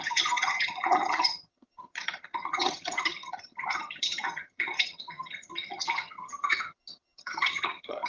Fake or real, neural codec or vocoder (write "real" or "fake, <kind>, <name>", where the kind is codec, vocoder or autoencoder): fake, vocoder, HiFi-GAN